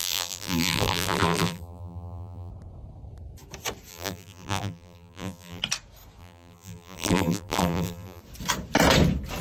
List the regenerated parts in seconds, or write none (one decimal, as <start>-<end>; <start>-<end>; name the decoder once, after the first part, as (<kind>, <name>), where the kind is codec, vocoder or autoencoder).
0.0-2.5 (vocoder, BigVGAN v2); 3.9-5.6; 6.2-8.2